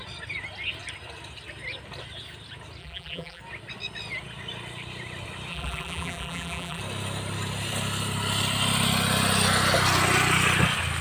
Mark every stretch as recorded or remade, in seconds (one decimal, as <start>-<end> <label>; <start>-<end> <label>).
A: 0.0-2.8 recorded; 2.8-3.4 remade; 3.4-5.5 recorded; 5.5-6.8 remade; 6.8-11.0 recorded